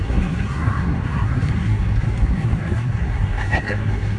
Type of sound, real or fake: fake